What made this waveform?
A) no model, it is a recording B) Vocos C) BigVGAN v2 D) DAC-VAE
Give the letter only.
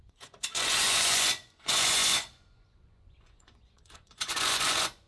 B